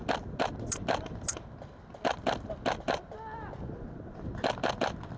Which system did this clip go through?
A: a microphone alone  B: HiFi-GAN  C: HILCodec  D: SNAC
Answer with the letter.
A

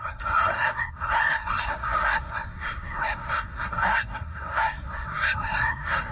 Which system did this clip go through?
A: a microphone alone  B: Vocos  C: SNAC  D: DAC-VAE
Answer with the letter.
C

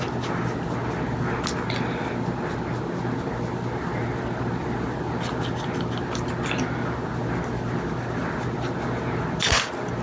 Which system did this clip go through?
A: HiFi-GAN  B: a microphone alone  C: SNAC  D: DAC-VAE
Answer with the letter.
B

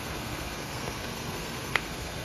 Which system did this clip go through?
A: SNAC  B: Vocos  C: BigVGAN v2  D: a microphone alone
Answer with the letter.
A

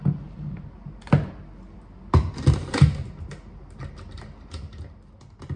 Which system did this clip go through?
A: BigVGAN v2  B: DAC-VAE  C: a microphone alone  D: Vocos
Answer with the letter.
C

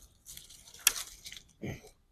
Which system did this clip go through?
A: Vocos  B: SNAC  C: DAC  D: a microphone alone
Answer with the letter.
D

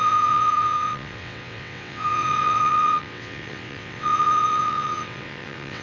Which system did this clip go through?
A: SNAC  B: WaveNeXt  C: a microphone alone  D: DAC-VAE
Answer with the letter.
B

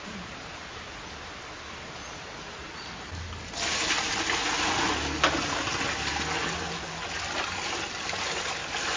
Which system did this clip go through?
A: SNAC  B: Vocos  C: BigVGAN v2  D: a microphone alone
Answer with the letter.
D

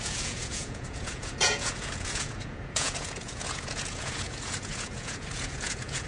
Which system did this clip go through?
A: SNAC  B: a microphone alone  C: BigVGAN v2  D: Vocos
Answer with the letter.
D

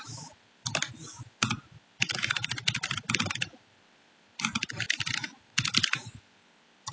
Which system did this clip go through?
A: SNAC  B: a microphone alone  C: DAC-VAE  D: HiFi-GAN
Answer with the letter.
B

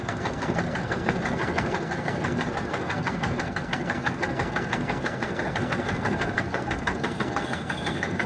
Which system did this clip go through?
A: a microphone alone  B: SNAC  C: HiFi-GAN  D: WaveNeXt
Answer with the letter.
B